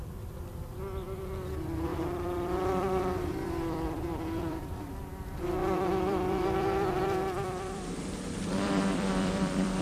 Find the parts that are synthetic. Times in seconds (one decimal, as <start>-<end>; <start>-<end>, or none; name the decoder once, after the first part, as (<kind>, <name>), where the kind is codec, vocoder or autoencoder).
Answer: 1.9-4.9 (vocoder, BigVGAN v2); 5.6-9.8